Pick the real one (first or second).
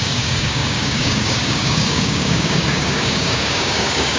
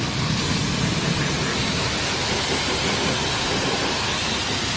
second